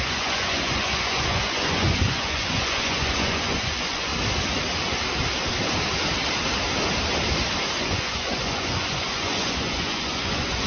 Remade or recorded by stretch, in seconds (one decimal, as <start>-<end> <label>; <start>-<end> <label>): 0.0-4.1 remade; 4.1-7.8 recorded; 7.8-10.7 remade